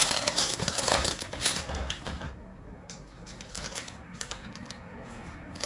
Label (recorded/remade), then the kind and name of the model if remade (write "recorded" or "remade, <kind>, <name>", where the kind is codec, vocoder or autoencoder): remade, codec, SNAC